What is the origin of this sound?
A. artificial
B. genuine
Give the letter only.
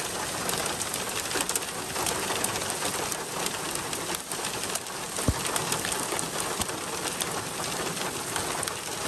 B